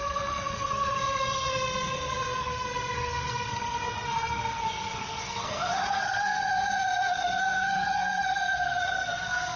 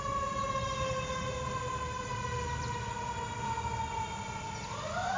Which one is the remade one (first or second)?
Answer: first